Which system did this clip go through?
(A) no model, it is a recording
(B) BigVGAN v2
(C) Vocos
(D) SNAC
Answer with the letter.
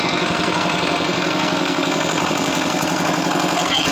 D